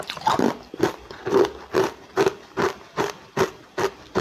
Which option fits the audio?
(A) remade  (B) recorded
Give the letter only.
A